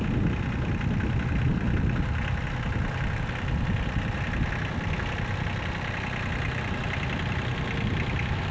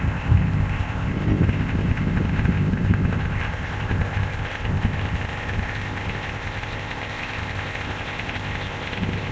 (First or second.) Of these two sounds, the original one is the first